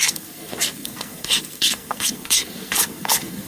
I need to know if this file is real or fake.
fake